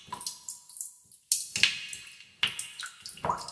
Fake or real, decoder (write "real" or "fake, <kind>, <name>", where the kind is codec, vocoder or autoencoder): real